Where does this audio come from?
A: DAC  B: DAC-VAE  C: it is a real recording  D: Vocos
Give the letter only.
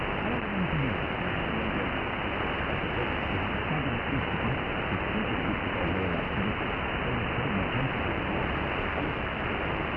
C